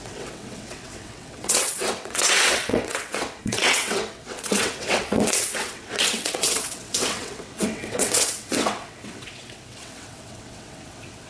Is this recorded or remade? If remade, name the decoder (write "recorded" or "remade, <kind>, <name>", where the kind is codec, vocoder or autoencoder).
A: remade, vocoder, WaveNeXt